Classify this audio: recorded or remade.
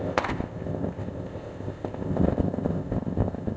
remade